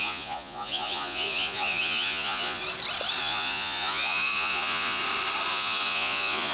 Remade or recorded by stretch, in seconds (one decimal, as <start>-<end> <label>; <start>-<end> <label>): 0.0-2.6 remade; 2.6-3.2 recorded; 3.2-5.0 remade; 5.0-5.5 recorded; 5.5-6.5 remade